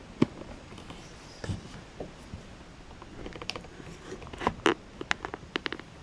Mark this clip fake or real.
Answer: real